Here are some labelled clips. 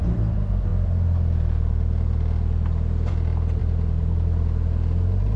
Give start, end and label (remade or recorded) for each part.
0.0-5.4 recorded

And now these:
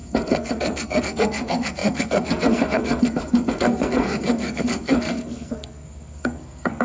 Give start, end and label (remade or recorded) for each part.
0.0-6.8 remade

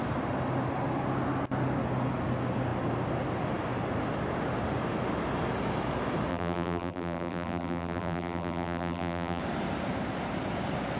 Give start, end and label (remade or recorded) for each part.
0.0-6.3 recorded; 6.3-9.4 remade; 9.4-11.0 recorded

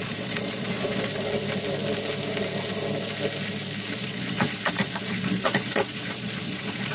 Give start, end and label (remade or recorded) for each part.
0.0-1.1 remade; 1.1-3.9 recorded; 3.9-6.9 remade